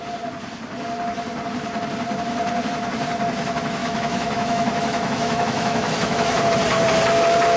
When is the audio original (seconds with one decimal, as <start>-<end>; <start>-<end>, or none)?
0.0-3.8; 6.4-7.6

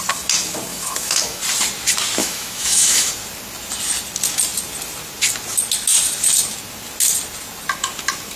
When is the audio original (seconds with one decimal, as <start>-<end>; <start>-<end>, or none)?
0.0-0.7; 1.4-2.2; 3.1-8.4

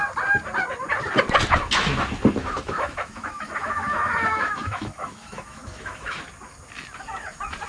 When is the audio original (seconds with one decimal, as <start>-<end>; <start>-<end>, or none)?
0.0-2.4; 6.2-7.7

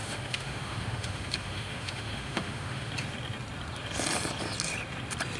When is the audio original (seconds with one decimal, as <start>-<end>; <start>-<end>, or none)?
2.9-5.4

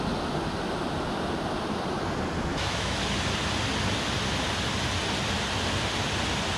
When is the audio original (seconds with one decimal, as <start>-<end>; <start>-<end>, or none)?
0.0-2.5; 3.0-6.6

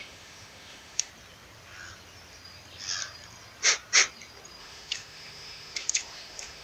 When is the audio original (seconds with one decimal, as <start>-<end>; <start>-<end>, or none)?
1.1-4.6